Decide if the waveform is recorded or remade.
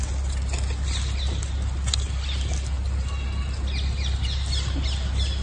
recorded